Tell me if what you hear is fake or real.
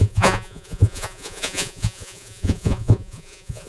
fake